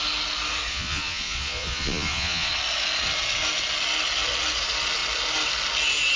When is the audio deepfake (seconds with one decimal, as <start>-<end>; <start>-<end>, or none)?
0.7-2.5